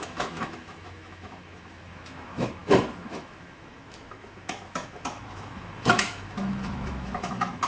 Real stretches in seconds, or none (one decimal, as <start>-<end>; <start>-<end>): none